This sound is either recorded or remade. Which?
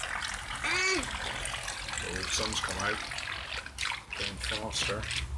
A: recorded